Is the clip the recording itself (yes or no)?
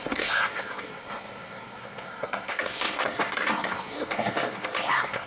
no